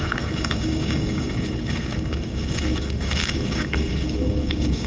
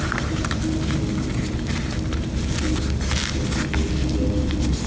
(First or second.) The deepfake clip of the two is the first